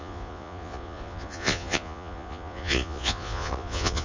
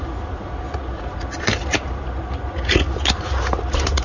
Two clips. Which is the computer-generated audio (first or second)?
first